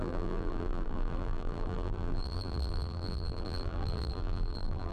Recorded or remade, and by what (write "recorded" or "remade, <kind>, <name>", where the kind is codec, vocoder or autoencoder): remade, vocoder, BigVGAN v2